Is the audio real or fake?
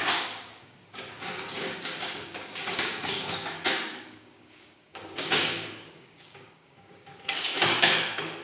fake